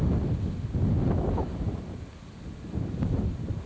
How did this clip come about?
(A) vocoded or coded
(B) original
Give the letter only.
B